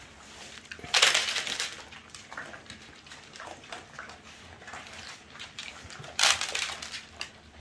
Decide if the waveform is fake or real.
fake